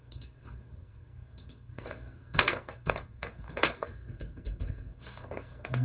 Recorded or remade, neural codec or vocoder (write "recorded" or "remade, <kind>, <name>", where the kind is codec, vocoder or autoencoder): remade, codec, SNAC